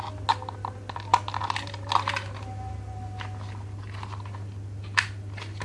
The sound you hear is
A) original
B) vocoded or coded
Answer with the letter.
A